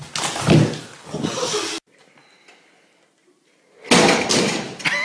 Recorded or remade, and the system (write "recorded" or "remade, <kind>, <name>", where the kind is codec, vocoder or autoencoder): recorded